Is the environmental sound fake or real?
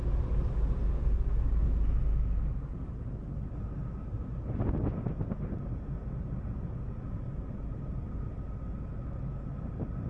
real